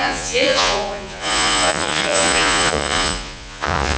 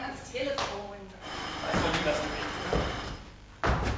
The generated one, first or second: first